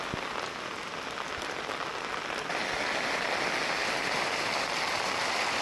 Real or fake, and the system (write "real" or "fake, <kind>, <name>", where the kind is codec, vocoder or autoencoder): real